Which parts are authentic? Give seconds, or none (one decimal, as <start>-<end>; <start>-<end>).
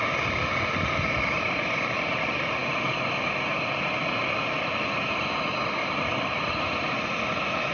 0.0-7.7